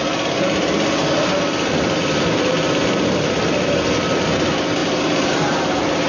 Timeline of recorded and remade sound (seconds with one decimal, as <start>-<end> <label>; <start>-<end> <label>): 0.0-4.8 recorded; 4.8-6.1 remade